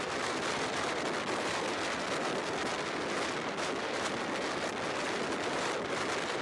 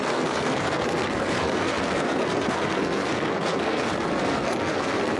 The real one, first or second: first